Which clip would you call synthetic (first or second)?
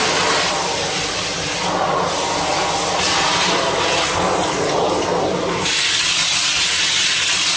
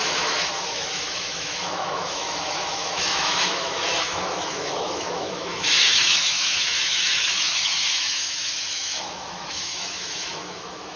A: second